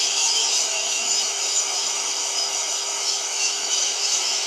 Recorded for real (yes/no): no